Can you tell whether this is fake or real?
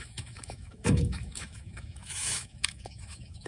fake